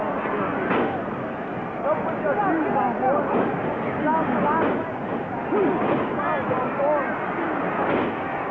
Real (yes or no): yes